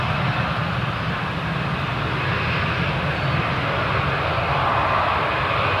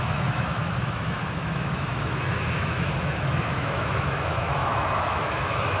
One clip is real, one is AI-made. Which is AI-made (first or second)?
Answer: second